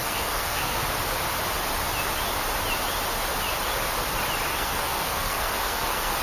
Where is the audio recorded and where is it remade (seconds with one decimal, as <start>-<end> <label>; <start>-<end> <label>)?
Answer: 0.0-0.8 remade; 0.8-4.5 recorded; 4.5-6.2 remade